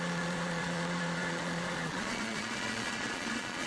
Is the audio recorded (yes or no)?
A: no